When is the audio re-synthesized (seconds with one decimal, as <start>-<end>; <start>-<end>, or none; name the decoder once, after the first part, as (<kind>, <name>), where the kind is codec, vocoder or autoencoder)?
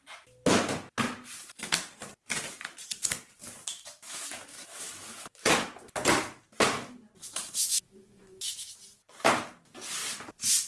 3.7-5.6 (autoencoder, DAC-VAE); 7.2-8.7